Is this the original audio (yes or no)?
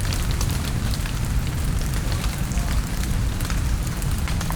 no